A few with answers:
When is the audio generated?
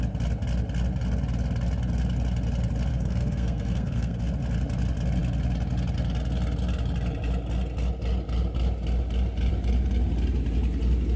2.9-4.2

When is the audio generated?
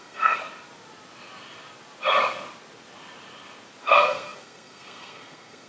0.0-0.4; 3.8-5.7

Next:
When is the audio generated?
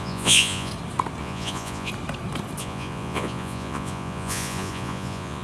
0.0-0.7; 1.2-1.9; 2.6-5.4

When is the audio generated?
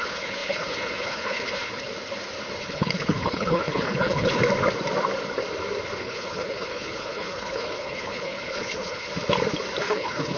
0.0-1.7; 2.6-4.4; 6.0-9.1; 9.8-10.4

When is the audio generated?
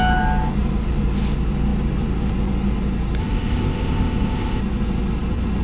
3.2-4.6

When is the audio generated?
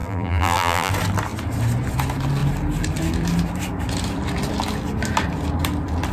0.0-0.9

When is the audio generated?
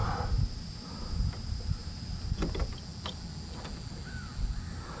none